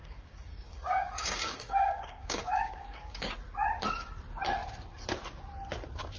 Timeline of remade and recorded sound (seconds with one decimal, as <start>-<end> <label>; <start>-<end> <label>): 0.0-3.3 remade; 3.3-6.2 recorded